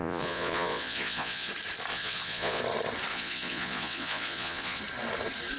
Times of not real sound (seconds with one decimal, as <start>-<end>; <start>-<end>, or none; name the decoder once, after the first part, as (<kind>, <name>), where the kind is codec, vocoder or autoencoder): 0.0-1.5 (vocoder, Vocos); 1.9-2.6; 3.1-4.8